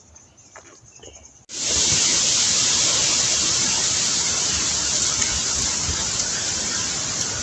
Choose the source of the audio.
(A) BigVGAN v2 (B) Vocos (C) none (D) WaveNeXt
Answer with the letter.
C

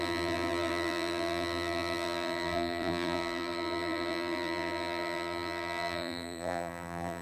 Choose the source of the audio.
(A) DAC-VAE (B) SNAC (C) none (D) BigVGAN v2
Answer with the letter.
D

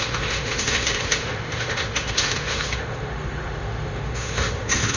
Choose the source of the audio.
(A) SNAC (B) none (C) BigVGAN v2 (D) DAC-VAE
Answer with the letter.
D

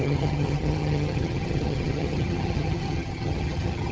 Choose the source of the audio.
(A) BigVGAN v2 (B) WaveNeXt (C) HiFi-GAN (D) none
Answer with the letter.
C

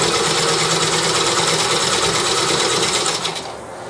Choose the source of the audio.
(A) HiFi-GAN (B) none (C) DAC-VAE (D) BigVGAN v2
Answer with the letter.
B